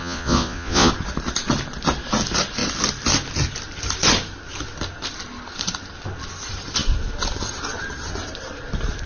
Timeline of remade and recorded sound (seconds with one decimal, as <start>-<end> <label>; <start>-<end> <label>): 0.0-0.9 remade; 0.9-9.1 recorded

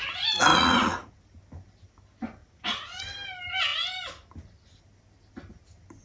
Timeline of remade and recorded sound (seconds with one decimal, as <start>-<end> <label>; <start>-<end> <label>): 0.0-0.5 recorded; 0.5-1.2 remade; 1.2-2.4 recorded; 2.4-3.0 remade; 3.0-6.0 recorded